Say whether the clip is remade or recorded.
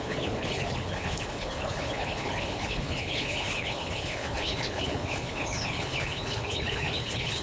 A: remade